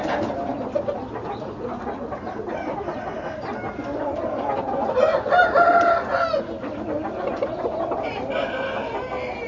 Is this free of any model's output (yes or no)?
yes